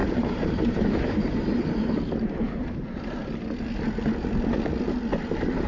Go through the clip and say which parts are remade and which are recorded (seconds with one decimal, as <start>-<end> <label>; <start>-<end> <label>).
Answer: 0.0-3.2 remade; 3.2-5.1 recorded; 5.1-5.7 remade